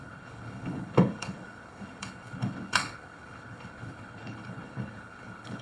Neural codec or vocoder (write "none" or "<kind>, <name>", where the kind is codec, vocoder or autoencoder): codec, HILCodec